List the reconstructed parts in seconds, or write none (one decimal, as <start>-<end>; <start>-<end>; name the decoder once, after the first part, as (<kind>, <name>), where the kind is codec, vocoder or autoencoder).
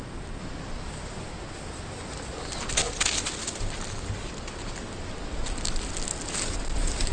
none